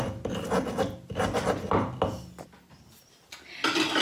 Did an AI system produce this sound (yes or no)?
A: no